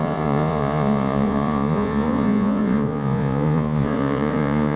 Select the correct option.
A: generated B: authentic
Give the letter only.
A